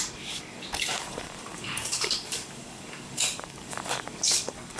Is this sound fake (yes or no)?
yes